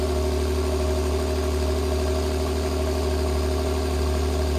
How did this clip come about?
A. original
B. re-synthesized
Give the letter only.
A